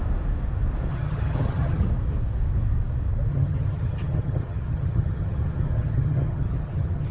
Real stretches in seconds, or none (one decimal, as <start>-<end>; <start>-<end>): 0.0-0.9; 1.9-3.3